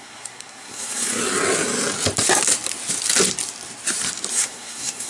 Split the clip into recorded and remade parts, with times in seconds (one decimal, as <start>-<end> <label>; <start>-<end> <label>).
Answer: 0.0-1.2 remade; 1.2-4.3 recorded; 4.3-5.1 remade